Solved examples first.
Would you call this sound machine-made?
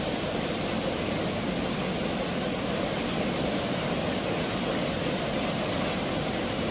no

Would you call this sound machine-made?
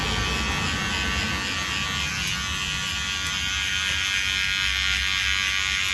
no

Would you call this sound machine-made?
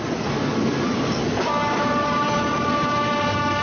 no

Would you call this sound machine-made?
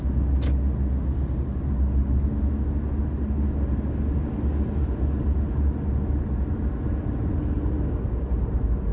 no